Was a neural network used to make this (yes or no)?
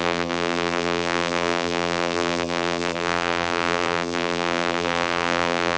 yes